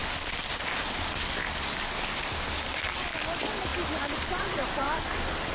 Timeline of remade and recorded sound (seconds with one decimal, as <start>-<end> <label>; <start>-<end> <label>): 0.0-5.5 recorded